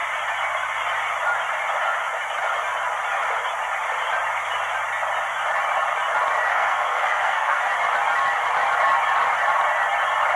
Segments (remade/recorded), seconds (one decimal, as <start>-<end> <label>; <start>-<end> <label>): 0.0-6.5 recorded; 6.5-7.6 remade; 7.6-10.4 recorded